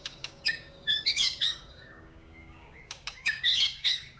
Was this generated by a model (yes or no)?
yes